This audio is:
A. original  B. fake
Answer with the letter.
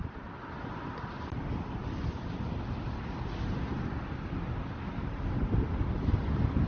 A